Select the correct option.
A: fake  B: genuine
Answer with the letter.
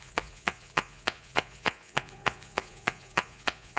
A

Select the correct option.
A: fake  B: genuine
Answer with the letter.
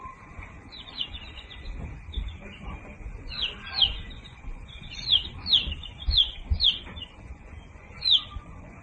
A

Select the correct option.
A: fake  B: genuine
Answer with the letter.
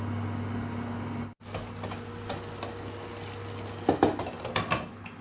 B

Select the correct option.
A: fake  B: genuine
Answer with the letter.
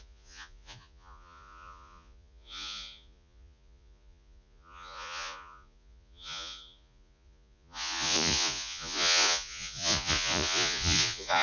A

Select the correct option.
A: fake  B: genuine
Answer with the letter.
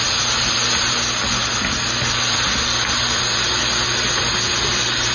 B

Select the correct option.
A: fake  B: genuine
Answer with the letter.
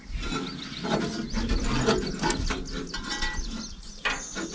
B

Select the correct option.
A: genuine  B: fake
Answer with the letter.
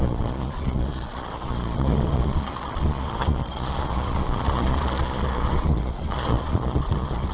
B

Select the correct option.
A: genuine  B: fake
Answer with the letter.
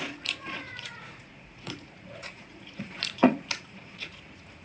B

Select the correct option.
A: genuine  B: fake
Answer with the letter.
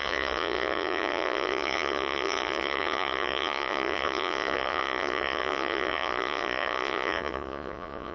B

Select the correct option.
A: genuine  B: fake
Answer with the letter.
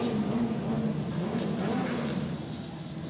A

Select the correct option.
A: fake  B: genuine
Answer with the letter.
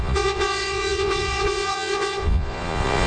A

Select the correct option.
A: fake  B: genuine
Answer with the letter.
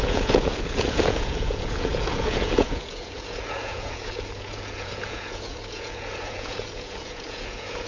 A